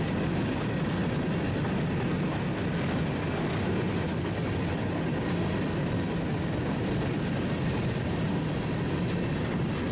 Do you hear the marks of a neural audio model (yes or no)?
no